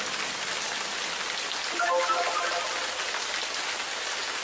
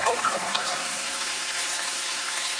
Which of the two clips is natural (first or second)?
first